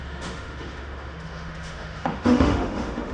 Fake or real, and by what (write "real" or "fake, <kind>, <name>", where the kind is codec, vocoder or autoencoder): fake, autoencoder, DAC-VAE